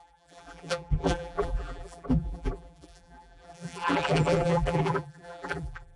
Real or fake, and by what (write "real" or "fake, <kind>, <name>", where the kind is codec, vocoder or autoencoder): fake, vocoder, BigVGAN v2